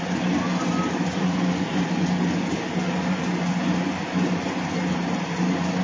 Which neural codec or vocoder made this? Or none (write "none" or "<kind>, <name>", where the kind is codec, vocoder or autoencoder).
none